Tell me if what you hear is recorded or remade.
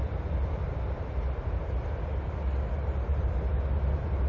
recorded